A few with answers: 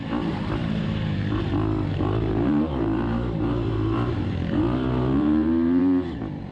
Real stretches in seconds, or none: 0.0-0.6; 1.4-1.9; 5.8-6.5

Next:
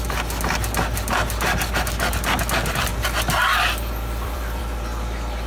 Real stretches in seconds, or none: 0.0-2.9; 4.6-5.5